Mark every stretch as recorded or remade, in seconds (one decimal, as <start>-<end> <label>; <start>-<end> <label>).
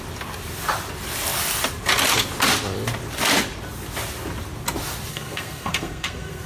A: 0.0-5.1 recorded; 5.1-6.5 remade